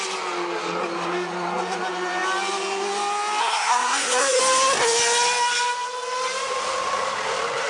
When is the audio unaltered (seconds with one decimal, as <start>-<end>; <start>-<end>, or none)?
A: 0.0-3.4; 4.4-7.7